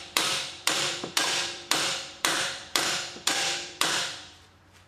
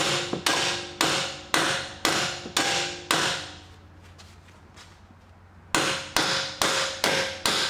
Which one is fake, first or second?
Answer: first